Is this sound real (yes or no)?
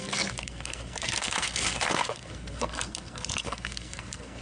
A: no